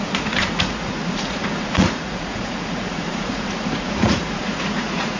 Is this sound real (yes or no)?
no